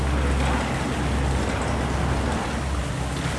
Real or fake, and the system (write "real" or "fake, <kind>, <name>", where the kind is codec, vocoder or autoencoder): real